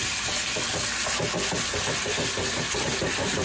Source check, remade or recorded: recorded